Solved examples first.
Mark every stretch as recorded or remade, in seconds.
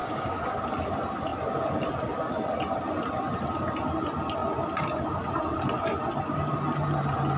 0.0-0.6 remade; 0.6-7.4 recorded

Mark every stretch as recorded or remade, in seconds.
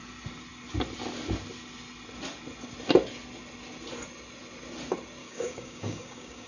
0.0-5.2 recorded; 5.2-6.5 remade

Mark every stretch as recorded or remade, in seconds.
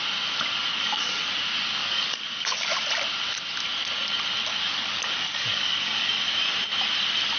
0.0-0.7 recorded; 0.7-1.3 remade; 1.3-1.8 recorded; 1.8-2.8 remade; 2.8-4.5 recorded; 4.5-6.2 remade; 6.2-7.4 recorded